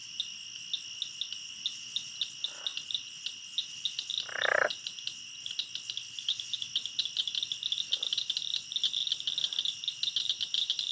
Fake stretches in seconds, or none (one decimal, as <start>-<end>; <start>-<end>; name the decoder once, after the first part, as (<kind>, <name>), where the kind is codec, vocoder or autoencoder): none